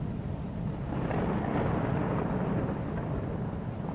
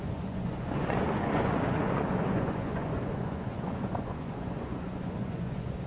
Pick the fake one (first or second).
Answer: second